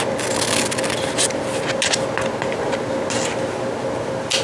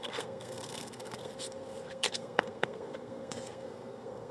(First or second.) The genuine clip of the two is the first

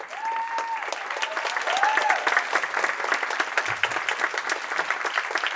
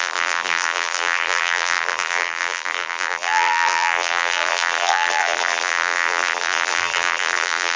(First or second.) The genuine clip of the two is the first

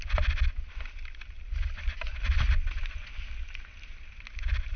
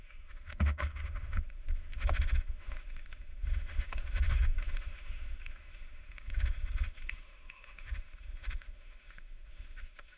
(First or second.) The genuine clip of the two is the first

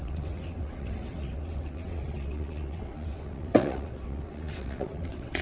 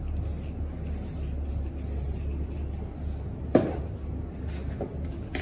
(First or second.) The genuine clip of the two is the second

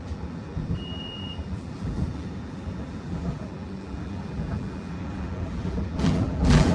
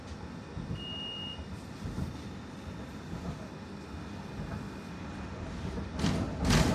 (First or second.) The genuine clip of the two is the second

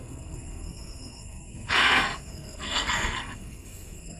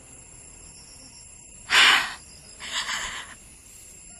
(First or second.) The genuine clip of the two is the second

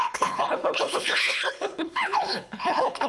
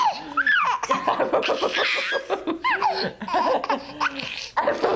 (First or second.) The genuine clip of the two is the second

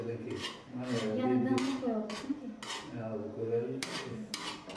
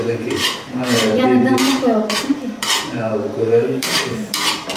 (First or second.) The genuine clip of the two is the first